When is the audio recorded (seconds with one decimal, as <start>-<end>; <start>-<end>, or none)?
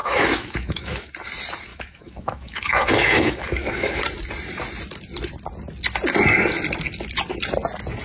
1.1-1.7; 4.0-8.0